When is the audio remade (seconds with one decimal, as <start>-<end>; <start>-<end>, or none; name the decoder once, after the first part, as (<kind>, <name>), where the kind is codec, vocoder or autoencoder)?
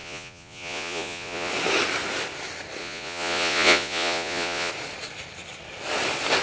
0.0-1.5 (vocoder, Vocos); 2.8-4.7